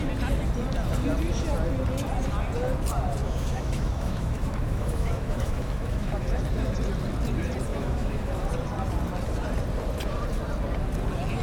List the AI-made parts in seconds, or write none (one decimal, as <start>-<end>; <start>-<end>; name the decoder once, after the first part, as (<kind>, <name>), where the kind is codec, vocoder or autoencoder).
3.2-6.4 (autoencoder, DAC-VAE); 7.7-8.5